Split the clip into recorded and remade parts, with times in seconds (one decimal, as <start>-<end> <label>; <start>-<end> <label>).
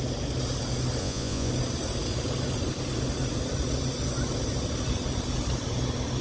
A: 0.0-1.0 recorded; 1.0-1.5 remade; 1.5-6.2 recorded